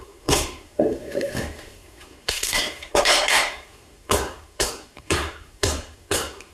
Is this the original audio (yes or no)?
no